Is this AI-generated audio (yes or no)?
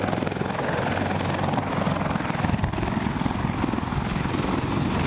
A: no